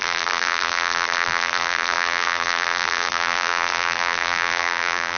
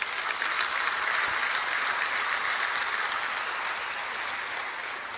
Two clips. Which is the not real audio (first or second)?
first